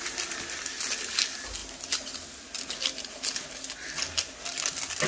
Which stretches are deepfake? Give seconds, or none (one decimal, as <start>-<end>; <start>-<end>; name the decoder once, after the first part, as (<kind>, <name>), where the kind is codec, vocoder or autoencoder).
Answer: none